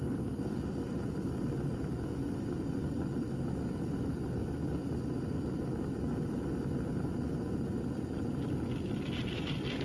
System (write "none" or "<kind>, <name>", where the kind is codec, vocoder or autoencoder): none